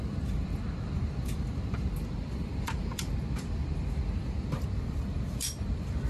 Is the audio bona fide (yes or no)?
no